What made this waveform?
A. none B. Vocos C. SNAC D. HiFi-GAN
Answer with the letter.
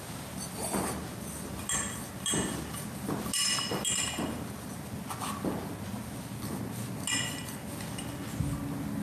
A